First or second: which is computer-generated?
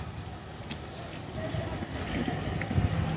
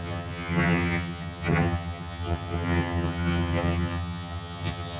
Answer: second